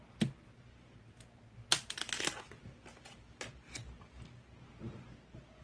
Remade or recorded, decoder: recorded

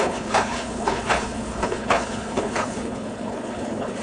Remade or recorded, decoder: remade, codec, HILCodec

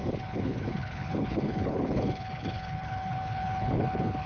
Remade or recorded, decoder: remade, codec, HILCodec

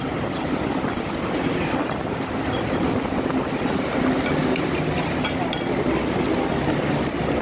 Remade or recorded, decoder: recorded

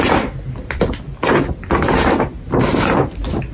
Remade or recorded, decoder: recorded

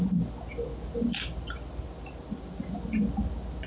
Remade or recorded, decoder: recorded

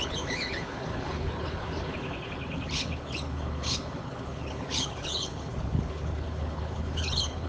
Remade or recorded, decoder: remade, codec, HILCodec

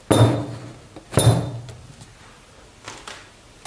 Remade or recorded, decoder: recorded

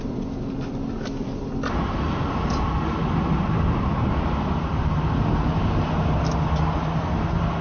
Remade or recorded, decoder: recorded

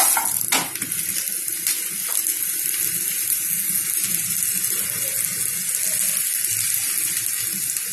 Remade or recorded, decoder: recorded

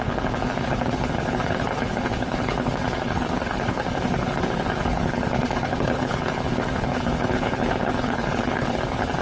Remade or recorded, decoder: remade, codec, HILCodec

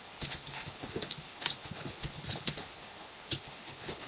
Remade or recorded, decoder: remade, codec, HILCodec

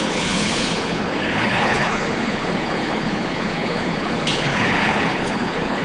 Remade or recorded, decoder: remade, codec, HILCodec